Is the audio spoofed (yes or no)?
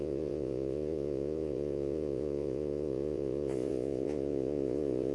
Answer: yes